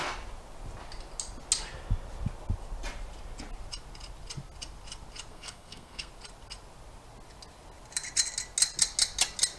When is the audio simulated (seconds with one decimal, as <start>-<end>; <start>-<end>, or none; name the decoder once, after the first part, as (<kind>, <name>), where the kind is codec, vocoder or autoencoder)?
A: 5.3-6.1 (codec, SNAC)